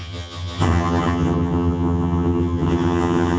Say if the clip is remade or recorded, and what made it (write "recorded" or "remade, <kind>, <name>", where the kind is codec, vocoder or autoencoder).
remade, vocoder, HiFi-GAN